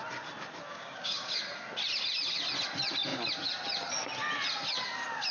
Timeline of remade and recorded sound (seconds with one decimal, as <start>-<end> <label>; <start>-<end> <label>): 0.0-0.7 recorded; 0.7-1.4 remade; 1.4-5.3 recorded